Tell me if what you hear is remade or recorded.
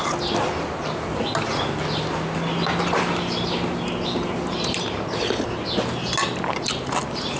recorded